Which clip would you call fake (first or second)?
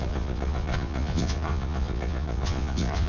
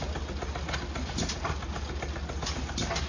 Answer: first